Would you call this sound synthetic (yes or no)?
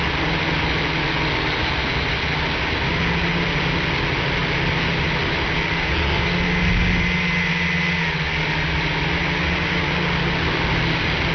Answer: no